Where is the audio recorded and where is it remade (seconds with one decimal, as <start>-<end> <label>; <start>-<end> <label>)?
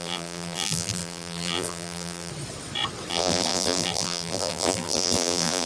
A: 0.0-2.3 remade; 2.3-3.1 recorded; 3.1-5.7 remade